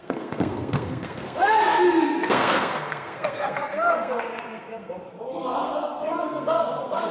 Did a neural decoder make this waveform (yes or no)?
yes